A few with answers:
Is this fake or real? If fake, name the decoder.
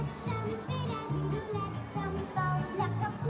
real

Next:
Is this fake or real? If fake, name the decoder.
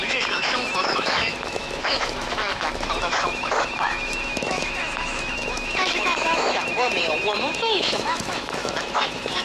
fake, autoencoder, DAC-VAE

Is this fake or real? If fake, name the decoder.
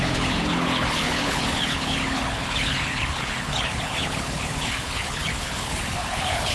fake, codec, HILCodec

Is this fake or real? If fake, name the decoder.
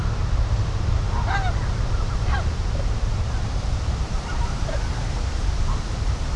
fake, vocoder, BigVGAN v2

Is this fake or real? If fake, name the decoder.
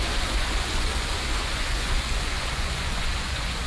fake, vocoder, Vocos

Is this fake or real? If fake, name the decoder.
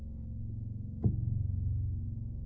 real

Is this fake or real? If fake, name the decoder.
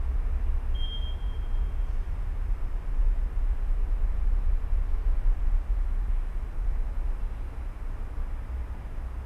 real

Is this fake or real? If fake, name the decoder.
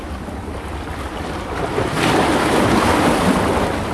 real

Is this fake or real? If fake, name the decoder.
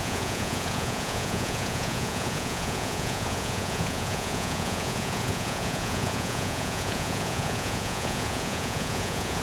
fake, vocoder, Vocos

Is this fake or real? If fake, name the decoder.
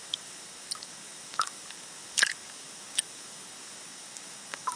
fake, codec, DAC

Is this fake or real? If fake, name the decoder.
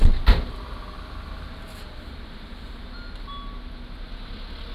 real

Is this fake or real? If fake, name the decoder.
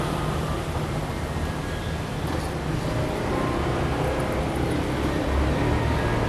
real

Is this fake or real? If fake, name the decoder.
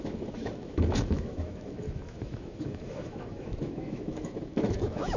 fake, autoencoder, DAC-VAE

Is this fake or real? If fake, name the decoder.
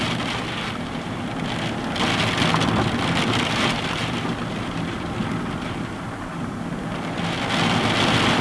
real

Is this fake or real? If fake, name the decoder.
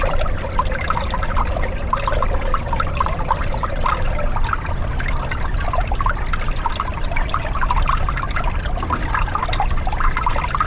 real